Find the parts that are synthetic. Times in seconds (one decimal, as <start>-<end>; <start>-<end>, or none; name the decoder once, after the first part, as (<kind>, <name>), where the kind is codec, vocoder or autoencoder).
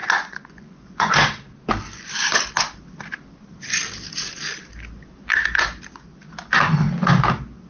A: 0.0-1.1 (vocoder, Vocos)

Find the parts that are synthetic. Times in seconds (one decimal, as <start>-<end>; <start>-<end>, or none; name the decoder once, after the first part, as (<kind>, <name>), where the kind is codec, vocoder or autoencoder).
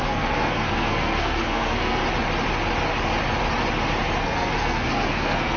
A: 0.0-2.0 (codec, SNAC); 4.2-5.6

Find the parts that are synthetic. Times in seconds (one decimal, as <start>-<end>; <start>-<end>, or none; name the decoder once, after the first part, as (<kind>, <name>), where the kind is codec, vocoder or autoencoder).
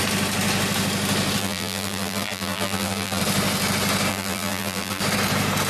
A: 1.4-3.2 (vocoder, BigVGAN v2); 4.1-5.0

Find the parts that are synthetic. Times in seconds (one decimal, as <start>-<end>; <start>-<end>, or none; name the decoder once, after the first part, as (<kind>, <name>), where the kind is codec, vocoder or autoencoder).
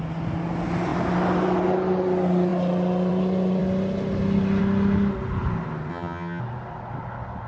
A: 5.9-6.4 (vocoder, HiFi-GAN)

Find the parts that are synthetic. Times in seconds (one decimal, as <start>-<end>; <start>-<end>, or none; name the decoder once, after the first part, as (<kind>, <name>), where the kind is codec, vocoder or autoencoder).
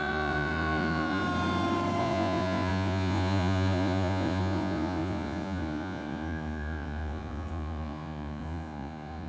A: 0.0-1.2 (vocoder, Vocos); 2.0-9.3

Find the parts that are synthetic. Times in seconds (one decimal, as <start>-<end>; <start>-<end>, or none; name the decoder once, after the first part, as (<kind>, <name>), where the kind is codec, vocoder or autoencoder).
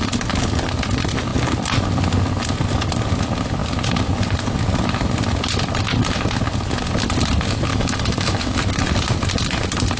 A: 7.7-8.6 (autoencoder, DAC-VAE)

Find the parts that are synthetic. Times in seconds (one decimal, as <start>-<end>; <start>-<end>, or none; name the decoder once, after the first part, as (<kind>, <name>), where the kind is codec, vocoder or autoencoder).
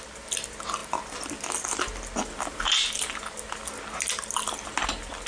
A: none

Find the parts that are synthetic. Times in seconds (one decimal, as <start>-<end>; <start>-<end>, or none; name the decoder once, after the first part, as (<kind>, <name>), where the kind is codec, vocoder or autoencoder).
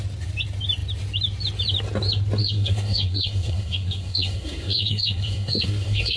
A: 2.4-6.2 (codec, SNAC)